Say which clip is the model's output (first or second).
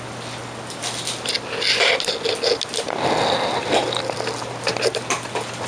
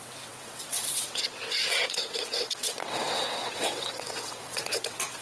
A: second